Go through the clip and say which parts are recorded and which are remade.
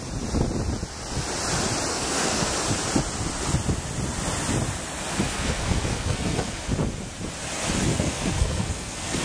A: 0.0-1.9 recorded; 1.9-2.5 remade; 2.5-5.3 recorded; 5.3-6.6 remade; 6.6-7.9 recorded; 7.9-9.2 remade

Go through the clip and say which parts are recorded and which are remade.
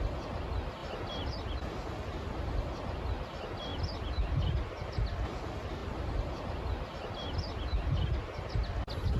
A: 0.0-9.2 recorded